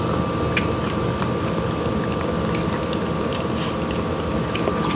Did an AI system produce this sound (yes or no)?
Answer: no